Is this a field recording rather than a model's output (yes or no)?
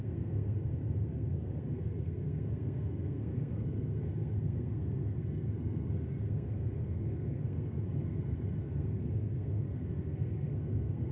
no